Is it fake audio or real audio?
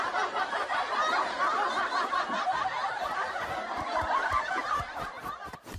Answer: real